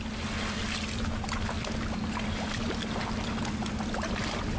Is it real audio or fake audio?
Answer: real